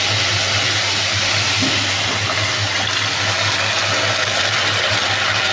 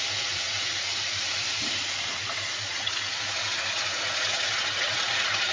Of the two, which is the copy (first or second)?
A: second